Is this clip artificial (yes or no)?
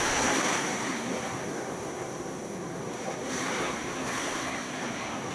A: yes